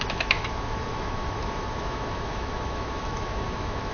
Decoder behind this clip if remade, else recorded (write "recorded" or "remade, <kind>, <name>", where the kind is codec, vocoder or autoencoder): remade, autoencoder, DAC-VAE